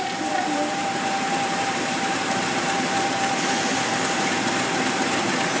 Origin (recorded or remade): remade